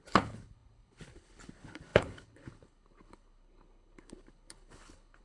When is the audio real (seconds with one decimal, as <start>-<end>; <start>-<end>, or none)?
none